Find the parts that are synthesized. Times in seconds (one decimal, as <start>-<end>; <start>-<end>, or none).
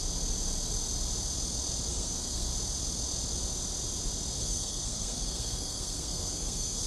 1.9-2.5; 4.4-6.9